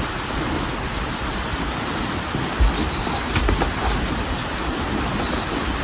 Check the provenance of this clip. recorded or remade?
recorded